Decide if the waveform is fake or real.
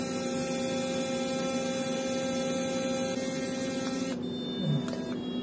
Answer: real